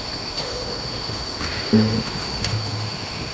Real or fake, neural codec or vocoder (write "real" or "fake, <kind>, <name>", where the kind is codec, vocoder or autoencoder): fake, autoencoder, DAC-VAE